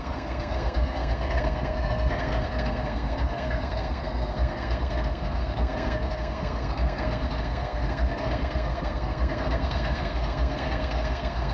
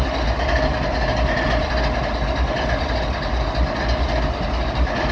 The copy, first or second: first